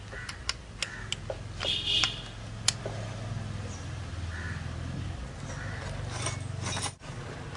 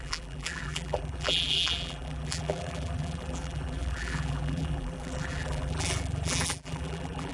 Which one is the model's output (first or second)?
second